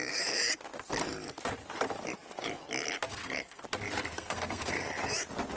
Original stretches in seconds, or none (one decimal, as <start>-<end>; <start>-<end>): 0.0-3.1; 3.6-4.1; 4.9-5.6